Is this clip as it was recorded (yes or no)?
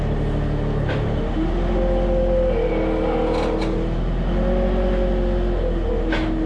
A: yes